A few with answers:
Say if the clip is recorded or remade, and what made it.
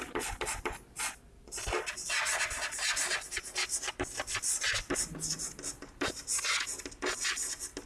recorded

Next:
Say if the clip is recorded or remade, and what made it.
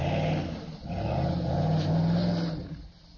recorded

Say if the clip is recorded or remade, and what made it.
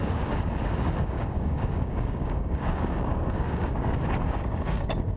remade, codec, DAC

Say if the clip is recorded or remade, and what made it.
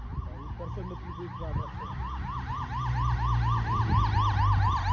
recorded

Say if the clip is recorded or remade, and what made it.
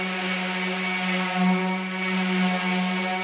recorded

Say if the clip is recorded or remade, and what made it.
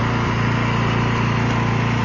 recorded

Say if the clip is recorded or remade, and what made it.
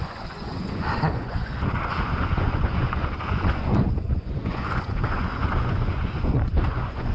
remade, vocoder, Vocos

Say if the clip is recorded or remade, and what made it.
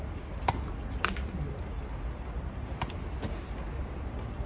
recorded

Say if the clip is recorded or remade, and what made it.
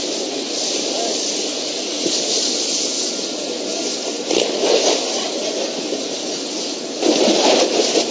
recorded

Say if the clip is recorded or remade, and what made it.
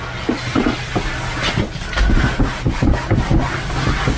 recorded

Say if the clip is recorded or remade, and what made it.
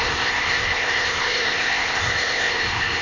remade, codec, ZipCodec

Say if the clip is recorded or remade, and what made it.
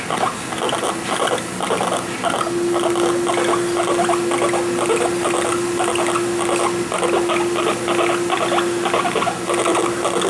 recorded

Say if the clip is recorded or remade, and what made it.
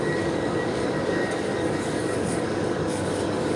remade, codec, DAC